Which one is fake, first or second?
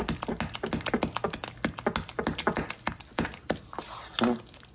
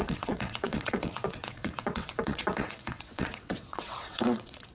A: second